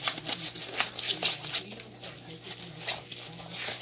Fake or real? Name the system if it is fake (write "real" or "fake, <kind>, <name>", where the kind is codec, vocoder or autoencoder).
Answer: real